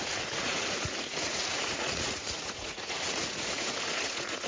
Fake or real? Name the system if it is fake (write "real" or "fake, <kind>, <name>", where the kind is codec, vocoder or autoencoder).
fake, vocoder, Vocos